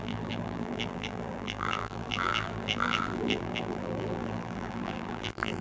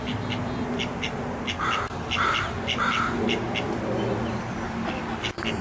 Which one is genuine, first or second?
second